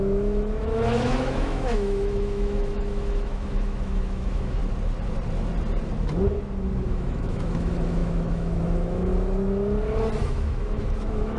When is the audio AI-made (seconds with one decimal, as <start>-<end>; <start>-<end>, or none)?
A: 0.0-4.6; 6.8-9.1; 10.2-11.4